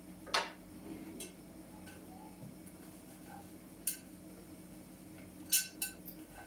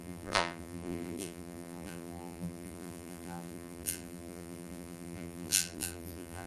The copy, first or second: second